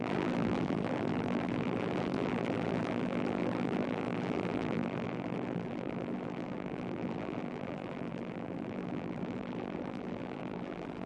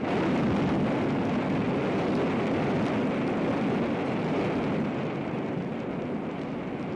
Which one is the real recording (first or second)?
second